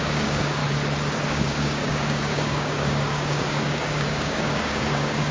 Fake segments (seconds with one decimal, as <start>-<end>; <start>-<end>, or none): 0.0-0.6; 1.3-5.3